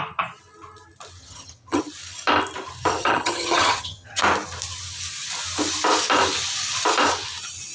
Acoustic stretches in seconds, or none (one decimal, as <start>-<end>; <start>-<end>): 0.0-1.2; 1.8-3.0; 4.2-7.7